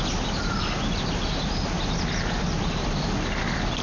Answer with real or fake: real